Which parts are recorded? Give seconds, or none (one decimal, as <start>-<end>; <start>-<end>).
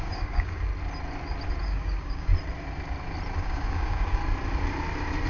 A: 0.7-1.6; 2.3-3.4; 4.2-5.3